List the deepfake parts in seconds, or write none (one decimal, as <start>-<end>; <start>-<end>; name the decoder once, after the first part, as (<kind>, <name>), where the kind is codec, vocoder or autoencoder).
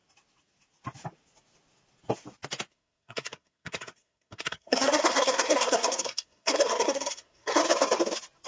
2.7-7.6 (codec, SNAC)